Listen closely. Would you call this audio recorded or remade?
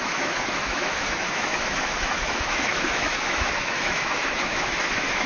remade